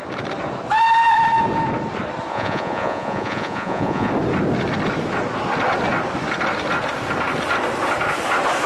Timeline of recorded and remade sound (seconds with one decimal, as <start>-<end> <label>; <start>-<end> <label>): 0.0-2.3 recorded; 2.3-4.1 remade; 4.1-8.7 recorded